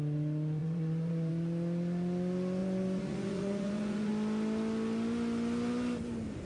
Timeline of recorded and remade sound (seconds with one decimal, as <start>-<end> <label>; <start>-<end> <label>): 0.0-0.6 recorded; 0.6-1.3 remade; 1.3-2.6 recorded; 2.6-4.1 remade; 4.1-6.5 recorded